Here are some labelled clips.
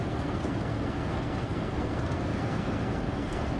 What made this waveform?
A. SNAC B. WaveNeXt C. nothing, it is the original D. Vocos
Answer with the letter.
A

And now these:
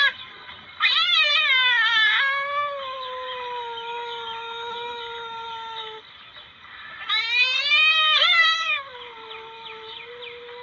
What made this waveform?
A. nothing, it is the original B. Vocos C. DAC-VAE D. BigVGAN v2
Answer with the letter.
A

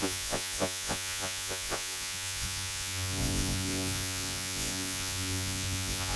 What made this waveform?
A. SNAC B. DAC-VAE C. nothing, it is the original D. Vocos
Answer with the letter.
D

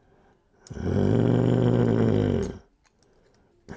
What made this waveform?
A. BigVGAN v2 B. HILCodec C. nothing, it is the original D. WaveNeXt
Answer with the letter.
C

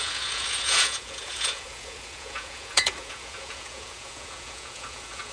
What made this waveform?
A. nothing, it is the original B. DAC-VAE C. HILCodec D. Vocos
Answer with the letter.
D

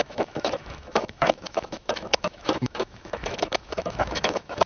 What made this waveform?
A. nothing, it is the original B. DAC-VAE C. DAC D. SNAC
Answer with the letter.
B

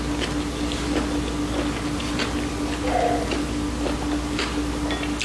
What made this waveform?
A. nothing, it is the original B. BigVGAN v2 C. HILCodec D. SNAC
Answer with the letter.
A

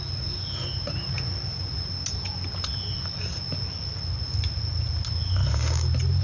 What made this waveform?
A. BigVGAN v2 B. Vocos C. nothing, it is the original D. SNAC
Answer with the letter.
C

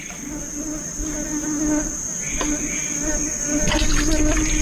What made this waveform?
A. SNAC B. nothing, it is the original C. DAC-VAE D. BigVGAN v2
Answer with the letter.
B